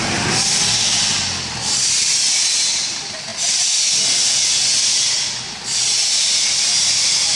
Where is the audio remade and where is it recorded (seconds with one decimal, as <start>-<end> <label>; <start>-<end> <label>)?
0.0-7.4 recorded